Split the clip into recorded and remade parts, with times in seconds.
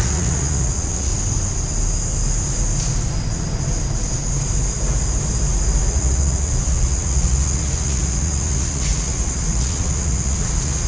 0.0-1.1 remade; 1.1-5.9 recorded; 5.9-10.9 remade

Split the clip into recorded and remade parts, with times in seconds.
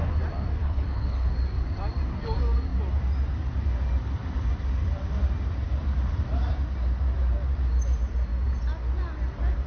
0.0-0.6 recorded; 0.6-1.3 remade; 1.3-9.7 recorded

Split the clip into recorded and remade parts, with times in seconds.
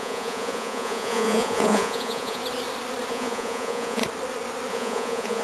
0.0-2.4 remade; 2.4-3.1 recorded; 3.1-4.0 remade; 4.0-4.7 recorded; 4.7-5.4 remade